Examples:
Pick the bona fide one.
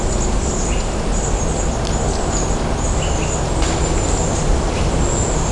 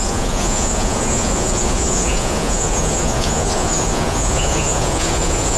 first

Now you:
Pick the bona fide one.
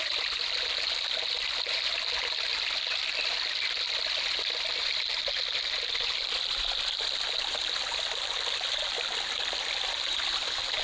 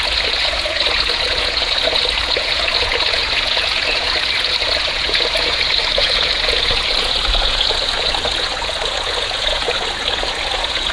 first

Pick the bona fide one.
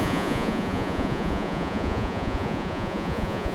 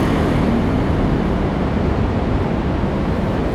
second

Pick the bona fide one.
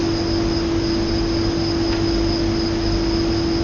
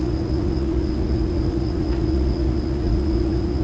first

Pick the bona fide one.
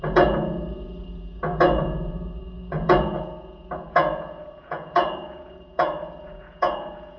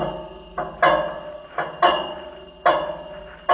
second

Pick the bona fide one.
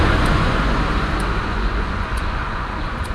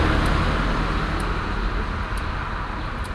second